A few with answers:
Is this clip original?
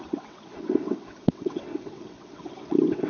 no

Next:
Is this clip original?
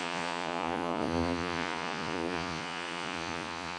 no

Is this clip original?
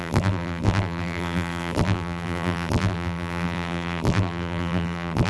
no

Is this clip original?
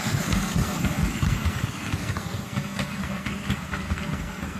no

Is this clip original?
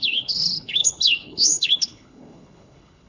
no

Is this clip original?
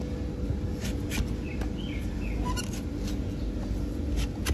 yes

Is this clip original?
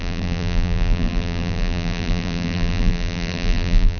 no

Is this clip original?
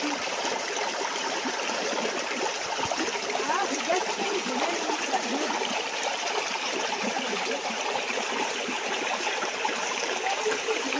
no